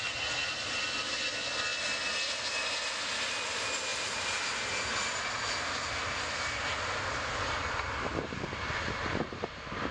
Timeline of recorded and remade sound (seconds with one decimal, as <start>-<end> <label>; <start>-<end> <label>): 0.0-9.9 recorded